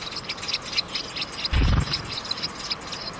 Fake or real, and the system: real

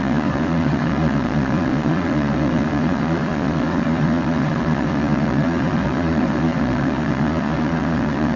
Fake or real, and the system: fake, vocoder, Vocos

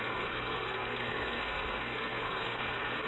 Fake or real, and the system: fake, codec, SNAC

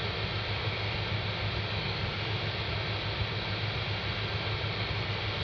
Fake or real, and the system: real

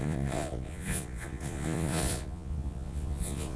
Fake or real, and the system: fake, vocoder, Vocos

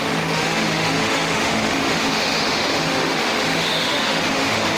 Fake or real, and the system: fake, autoencoder, DAC-VAE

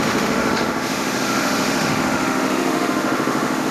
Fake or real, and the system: fake, autoencoder, DAC-VAE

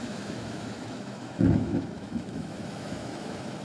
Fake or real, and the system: fake, autoencoder, DAC-VAE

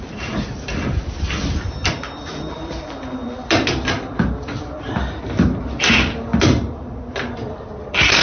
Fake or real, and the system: fake, vocoder, BigVGAN v2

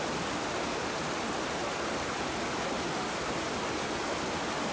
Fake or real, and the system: real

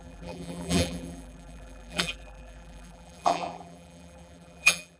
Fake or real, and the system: fake, vocoder, BigVGAN v2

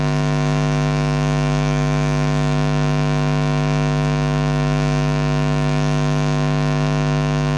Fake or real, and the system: fake, autoencoder, DAC-VAE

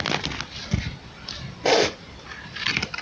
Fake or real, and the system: real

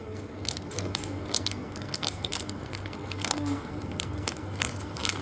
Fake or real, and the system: fake, codec, SNAC